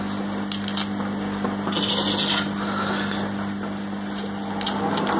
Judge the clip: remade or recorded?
recorded